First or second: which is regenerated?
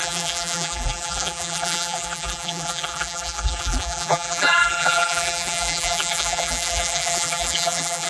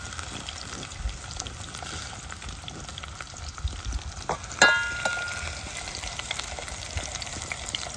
first